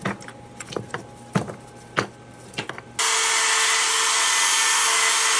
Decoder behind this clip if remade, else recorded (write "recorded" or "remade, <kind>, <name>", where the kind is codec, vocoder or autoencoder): recorded